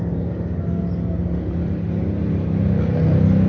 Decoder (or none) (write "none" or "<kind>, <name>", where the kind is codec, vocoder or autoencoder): none